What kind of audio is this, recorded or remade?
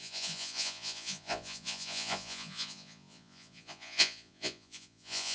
remade